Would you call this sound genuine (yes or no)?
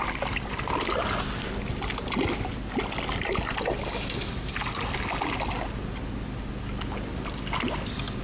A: yes